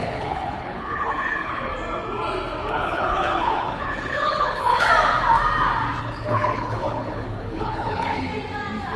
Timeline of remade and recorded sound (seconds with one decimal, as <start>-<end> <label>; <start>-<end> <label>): 0.0-1.7 remade; 1.7-2.7 recorded; 2.7-4.9 remade; 4.9-6.0 recorded; 6.0-8.3 remade; 8.3-9.0 recorded